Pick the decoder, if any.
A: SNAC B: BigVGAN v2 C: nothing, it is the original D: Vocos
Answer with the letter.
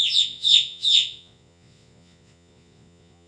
D